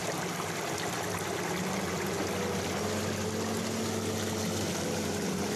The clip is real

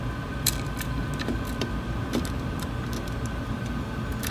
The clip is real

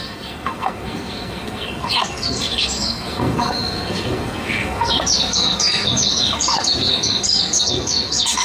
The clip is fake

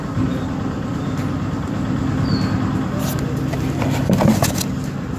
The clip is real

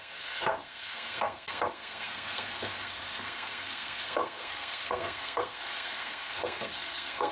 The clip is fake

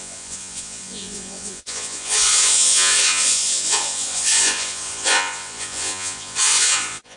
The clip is fake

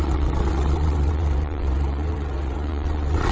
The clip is fake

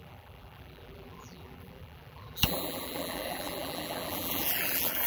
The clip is fake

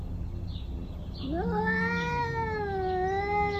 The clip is real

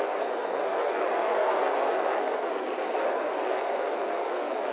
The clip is fake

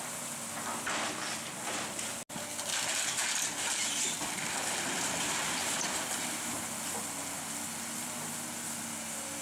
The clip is real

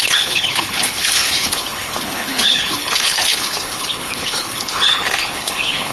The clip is fake